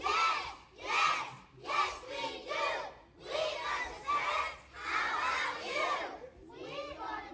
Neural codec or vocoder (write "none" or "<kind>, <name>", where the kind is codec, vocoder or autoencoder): none